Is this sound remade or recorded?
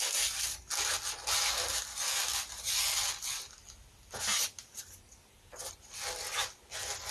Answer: recorded